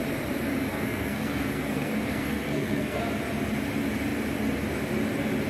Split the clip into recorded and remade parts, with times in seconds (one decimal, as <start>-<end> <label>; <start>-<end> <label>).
0.0-0.7 recorded; 0.7-3.0 remade; 3.0-5.5 recorded